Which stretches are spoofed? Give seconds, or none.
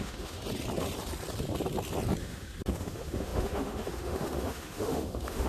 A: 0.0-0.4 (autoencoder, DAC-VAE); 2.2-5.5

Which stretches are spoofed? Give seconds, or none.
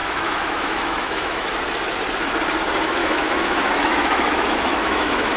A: 0.0-1.5 (autoencoder, DAC-VAE); 3.0-5.4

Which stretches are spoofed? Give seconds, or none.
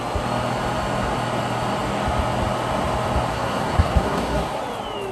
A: 3.3-4.6 (codec, SNAC)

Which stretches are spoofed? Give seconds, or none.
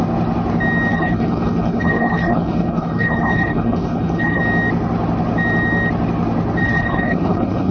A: 0.9-4.4 (codec, HILCodec); 6.6-7.7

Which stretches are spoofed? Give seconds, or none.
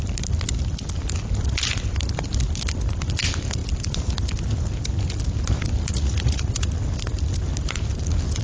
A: 5.9-6.7 (vocoder, Vocos)